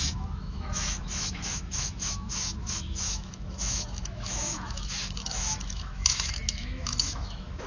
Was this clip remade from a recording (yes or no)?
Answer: yes